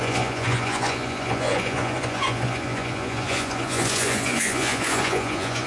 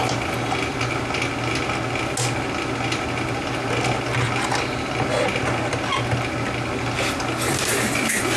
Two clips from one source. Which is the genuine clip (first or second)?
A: second